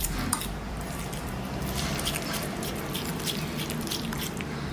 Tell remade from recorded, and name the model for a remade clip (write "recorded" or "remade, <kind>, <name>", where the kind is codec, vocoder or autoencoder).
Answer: remade, vocoder, BigVGAN v2